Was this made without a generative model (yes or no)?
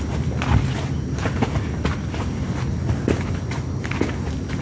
yes